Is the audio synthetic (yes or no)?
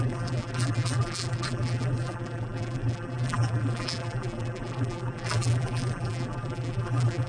yes